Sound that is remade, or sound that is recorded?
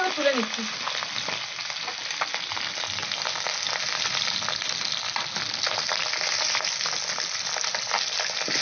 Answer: recorded